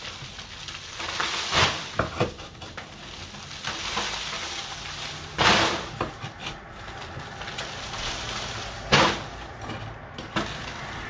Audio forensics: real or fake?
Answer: real